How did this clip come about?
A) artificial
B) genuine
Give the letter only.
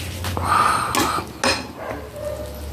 B